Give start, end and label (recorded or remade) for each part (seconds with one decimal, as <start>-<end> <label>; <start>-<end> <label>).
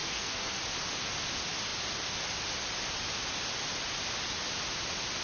0.0-0.6 remade; 0.6-5.2 recorded